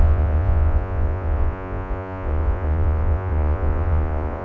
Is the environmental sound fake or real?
fake